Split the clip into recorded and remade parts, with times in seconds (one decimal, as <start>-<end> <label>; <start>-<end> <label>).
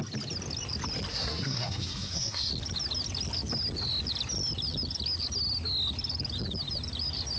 0.0-1.1 recorded; 1.1-2.5 remade; 2.5-7.4 recorded